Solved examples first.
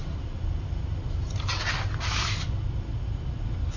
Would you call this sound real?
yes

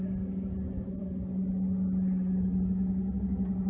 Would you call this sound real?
yes